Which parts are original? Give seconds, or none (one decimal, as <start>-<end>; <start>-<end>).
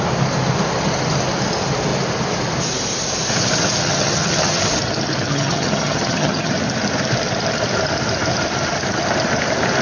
0.0-3.8; 4.6-5.3; 6.5-9.8